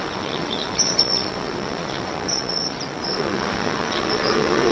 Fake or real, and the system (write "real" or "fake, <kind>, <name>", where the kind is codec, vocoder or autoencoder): fake, vocoder, WaveNeXt